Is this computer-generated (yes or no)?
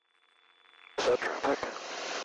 no